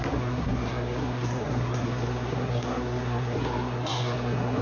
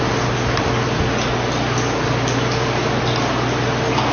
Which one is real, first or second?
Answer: second